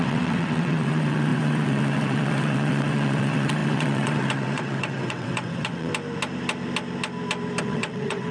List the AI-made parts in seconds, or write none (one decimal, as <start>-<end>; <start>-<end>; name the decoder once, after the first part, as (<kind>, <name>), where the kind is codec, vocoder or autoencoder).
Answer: 0.0-5.9 (vocoder, WaveNeXt); 7.6-8.3